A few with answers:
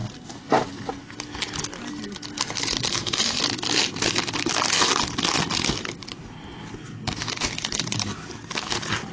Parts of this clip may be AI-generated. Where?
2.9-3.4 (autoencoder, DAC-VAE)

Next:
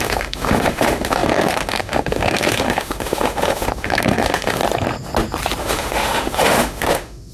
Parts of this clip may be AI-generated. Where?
0.0-4.6 (autoencoder, DAC-VAE); 5.6-7.3

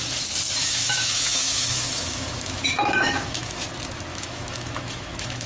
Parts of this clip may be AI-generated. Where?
0.6-3.6 (autoencoder, DAC-VAE); 4.1-5.5

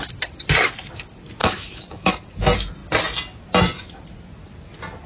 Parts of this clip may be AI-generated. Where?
1.4-2.1 (autoencoder, DAC-VAE)

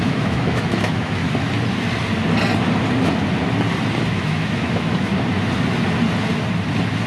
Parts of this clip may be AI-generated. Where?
0.0-1.2 (autoencoder, DAC-VAE); 4.1-5.1

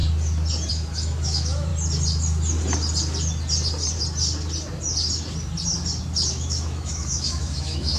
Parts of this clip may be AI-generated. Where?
0.7-1.7 (autoencoder, DAC-VAE); 6.3-8.0

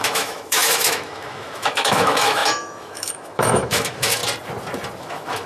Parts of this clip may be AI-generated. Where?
0.0-4.2 (autoencoder, DAC-VAE); 5.0-5.5

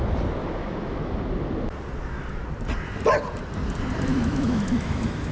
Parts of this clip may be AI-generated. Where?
0.4-1.2 (autoencoder, DAC-VAE); 4.1-5.3